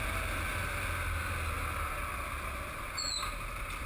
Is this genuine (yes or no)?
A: yes